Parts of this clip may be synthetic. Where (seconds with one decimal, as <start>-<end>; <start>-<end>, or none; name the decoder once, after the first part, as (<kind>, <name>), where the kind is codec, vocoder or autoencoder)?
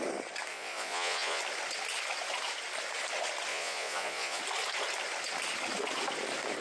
0.5-1.4 (vocoder, Vocos); 3.5-4.4